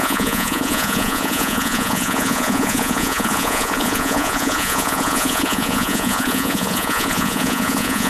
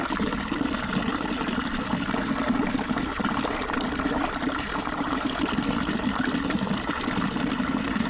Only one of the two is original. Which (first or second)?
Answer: second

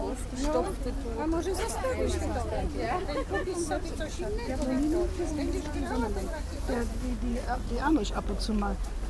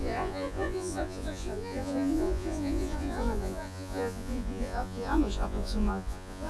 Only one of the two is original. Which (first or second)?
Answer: first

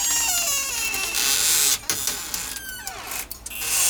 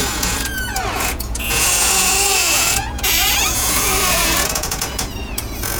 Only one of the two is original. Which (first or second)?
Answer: first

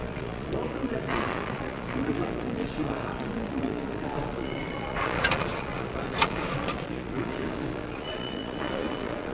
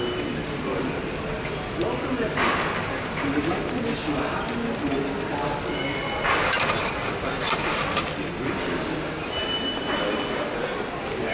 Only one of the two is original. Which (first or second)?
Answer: second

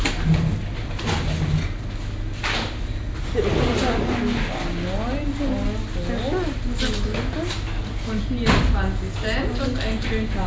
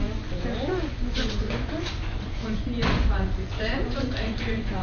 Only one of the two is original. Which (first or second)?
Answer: first